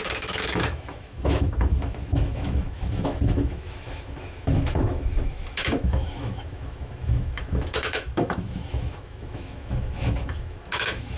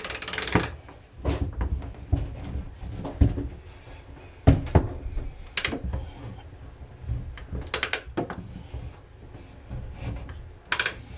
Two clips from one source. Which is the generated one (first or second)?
first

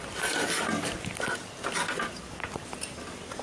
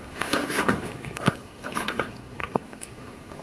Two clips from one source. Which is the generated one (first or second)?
second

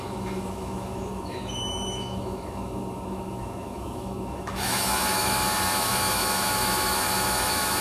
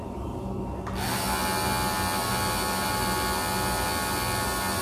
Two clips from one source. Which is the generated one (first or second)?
first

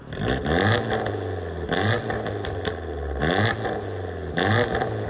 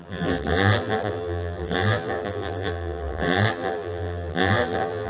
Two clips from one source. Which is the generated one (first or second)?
second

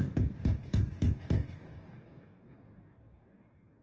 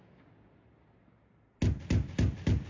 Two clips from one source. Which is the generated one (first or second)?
first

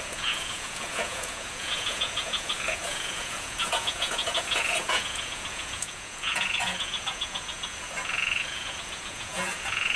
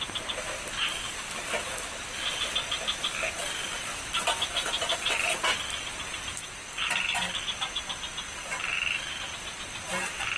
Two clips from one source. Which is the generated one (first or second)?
first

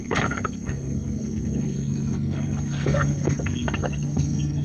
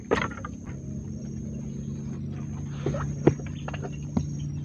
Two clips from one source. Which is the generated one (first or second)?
first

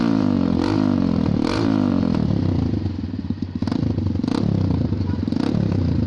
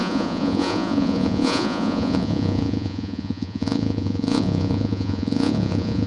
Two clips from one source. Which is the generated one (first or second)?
second